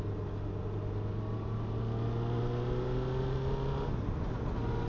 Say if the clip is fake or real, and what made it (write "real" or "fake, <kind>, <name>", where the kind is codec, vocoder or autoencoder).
real